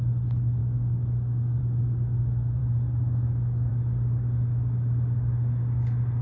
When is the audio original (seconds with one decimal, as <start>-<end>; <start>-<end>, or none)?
0.0-0.6; 1.6-6.2